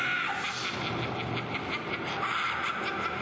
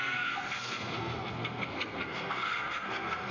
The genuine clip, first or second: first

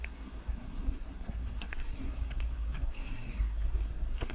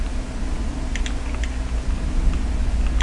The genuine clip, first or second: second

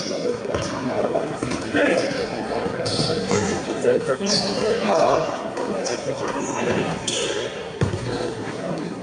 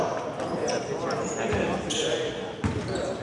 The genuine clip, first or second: second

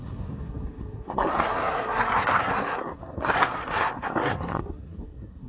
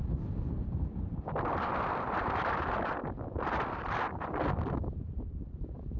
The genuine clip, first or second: second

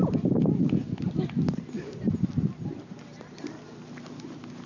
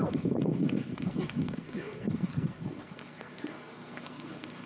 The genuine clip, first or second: first